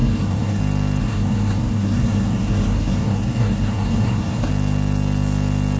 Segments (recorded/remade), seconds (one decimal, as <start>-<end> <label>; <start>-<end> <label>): 0.0-0.6 remade; 0.6-1.0 recorded; 1.0-4.5 remade; 4.5-5.8 recorded